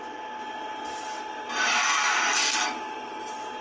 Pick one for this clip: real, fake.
real